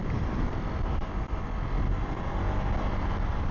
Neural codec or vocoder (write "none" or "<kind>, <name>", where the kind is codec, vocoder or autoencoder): none